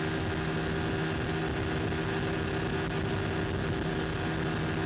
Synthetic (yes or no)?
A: no